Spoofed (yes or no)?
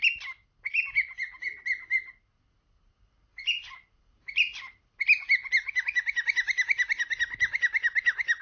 no